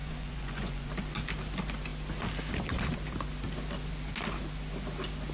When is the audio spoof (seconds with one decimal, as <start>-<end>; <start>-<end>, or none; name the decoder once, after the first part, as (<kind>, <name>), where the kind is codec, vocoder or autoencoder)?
0.0-0.9 (vocoder, Vocos)